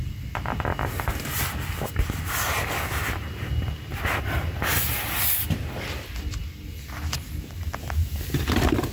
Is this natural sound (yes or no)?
yes